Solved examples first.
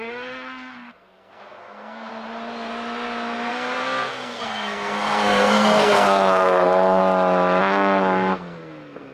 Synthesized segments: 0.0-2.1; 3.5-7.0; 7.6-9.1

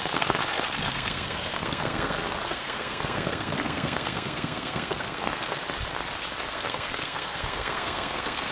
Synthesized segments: 0.0-0.4; 0.9-5.6; 6.5-8.5

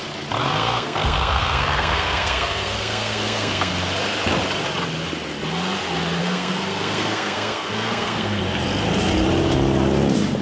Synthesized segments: 0.4-3.7; 6.2-8.4